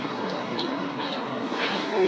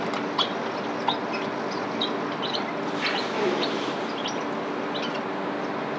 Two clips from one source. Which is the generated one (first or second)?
first